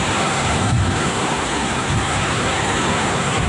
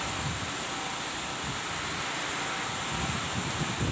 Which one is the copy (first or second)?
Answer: first